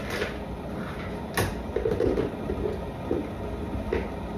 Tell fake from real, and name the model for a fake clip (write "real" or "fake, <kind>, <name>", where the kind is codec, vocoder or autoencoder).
real